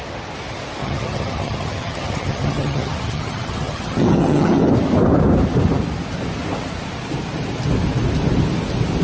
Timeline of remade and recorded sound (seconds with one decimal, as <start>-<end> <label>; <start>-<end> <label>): 0.0-0.8 recorded; 0.8-4.7 remade; 4.7-9.0 recorded